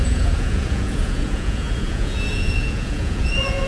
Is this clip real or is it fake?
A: fake